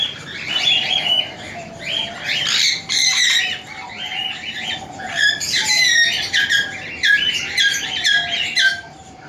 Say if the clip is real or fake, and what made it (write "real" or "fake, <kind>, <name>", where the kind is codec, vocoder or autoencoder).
fake, vocoder, BigVGAN v2